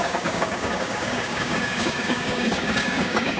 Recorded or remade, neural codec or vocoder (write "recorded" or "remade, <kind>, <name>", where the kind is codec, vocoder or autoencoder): remade, codec, DAC